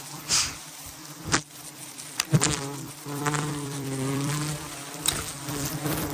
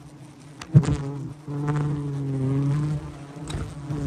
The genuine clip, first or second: second